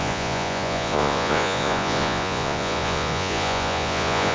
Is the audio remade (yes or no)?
yes